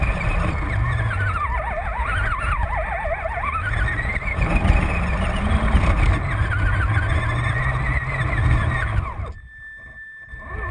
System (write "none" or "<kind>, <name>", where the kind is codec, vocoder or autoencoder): none